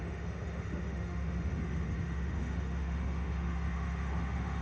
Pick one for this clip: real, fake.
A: fake